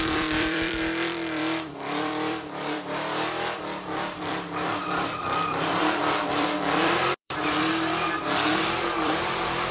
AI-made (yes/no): yes